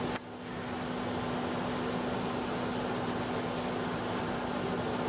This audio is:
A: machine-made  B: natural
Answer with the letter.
B